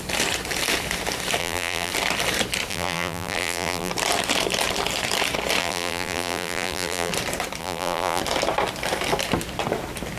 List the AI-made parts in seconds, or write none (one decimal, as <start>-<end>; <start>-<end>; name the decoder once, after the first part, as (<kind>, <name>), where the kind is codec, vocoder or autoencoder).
1.4-1.9 (vocoder, BigVGAN v2); 2.7-3.9; 5.6-7.1; 7.6-8.2